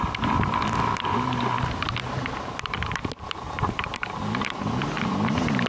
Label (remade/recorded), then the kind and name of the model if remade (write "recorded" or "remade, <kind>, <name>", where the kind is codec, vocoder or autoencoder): recorded